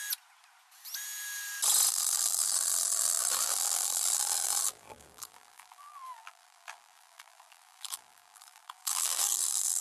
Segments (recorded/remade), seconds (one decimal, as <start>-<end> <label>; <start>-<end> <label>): 0.0-1.9 recorded; 1.9-9.8 remade